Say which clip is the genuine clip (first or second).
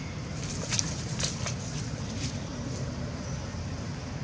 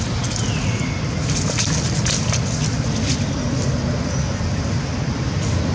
second